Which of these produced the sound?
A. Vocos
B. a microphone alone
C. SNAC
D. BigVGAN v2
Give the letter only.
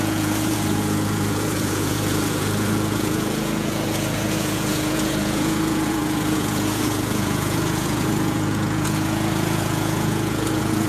A